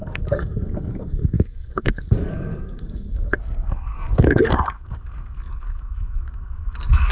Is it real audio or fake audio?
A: fake